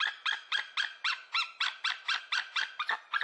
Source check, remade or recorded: recorded